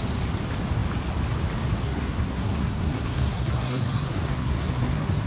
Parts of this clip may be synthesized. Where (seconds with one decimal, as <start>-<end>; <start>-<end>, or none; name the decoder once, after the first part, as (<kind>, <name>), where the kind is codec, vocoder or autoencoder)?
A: 1.8-5.3 (codec, SNAC)